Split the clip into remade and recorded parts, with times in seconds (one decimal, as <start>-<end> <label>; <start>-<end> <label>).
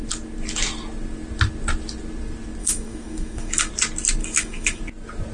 0.0-2.6 recorded; 2.6-3.7 remade; 3.7-4.2 recorded; 4.2-4.8 remade; 4.8-5.3 recorded